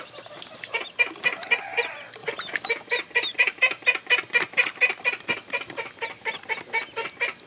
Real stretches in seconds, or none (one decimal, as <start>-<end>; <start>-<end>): 0.0-7.5